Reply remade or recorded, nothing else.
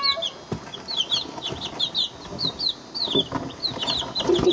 recorded